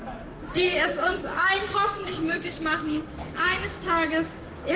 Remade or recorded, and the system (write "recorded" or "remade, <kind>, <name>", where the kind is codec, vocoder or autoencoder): remade, codec, DAC